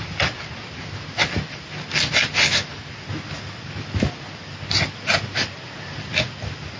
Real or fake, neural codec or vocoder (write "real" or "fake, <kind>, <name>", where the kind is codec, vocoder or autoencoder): real